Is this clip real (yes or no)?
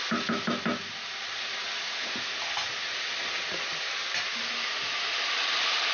yes